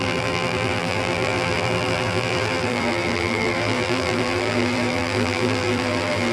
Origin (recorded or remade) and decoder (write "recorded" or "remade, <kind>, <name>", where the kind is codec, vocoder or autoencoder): remade, vocoder, BigVGAN v2